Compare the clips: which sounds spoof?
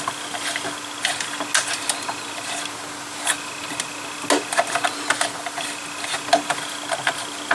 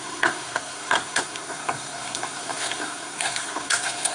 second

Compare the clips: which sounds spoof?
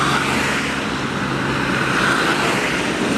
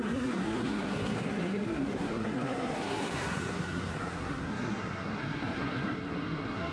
second